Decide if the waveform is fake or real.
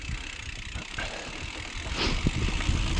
real